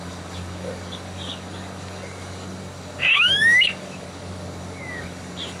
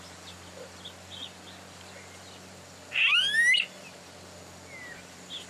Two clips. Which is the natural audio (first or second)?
second